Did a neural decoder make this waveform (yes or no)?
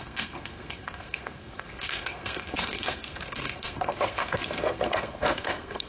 yes